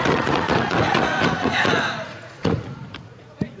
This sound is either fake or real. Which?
fake